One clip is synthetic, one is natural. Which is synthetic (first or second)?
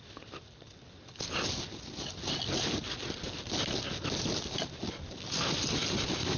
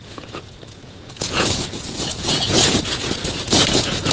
second